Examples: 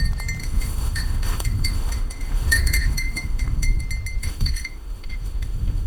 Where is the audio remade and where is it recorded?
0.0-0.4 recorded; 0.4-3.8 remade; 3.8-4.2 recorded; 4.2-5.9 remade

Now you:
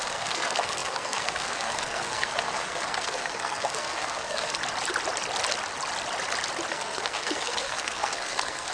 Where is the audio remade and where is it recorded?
0.0-4.6 remade; 4.6-6.7 recorded; 6.7-8.7 remade

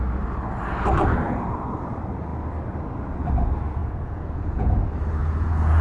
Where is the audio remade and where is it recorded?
0.0-3.8 recorded; 3.8-4.7 remade; 4.7-5.2 recorded; 5.2-5.8 remade

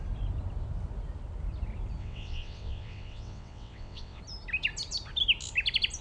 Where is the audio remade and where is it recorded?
0.0-2.0 recorded; 2.0-4.2 remade; 4.2-6.0 recorded